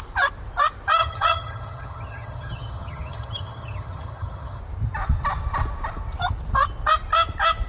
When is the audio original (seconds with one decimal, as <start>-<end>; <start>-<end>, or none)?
0.0-1.0; 4.6-7.7